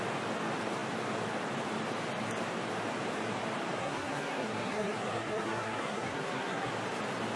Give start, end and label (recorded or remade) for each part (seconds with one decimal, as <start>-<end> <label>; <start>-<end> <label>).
0.0-3.8 recorded; 3.8-6.7 remade; 6.7-7.4 recorded